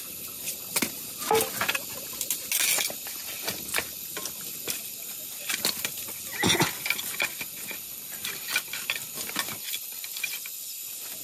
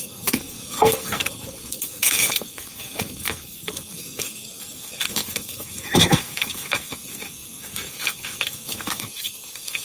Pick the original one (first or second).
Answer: first